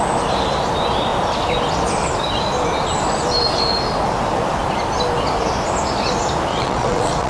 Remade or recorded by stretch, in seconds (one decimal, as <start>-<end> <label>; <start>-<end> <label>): 0.0-6.5 recorded; 6.5-7.3 remade